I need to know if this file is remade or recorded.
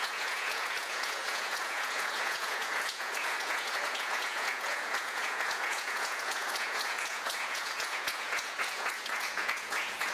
remade